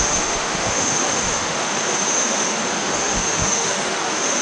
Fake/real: fake